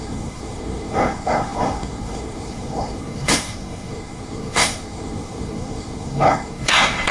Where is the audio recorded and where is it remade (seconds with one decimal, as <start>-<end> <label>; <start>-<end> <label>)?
0.0-7.1 remade